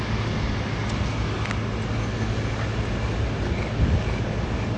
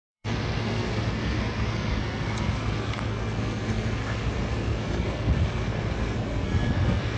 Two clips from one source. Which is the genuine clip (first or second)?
first